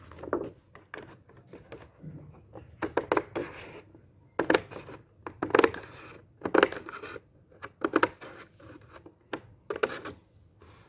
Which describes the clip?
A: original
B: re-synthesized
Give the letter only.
A